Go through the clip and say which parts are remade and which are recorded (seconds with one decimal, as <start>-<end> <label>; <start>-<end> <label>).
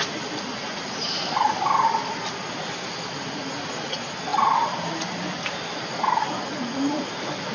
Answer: 0.0-7.5 recorded